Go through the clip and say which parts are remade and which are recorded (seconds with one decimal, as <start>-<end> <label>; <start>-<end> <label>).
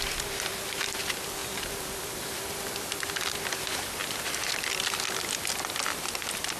0.0-6.6 recorded